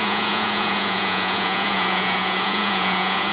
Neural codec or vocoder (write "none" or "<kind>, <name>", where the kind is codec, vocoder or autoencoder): vocoder, Vocos